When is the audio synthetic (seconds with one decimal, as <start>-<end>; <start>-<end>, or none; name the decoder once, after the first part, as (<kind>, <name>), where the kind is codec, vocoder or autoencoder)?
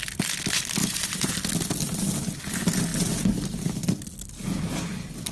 0.8-1.3 (vocoder, Vocos)